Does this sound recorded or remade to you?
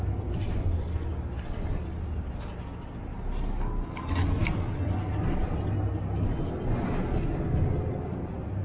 recorded